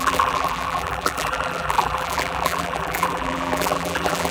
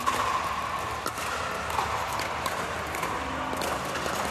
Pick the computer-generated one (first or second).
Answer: first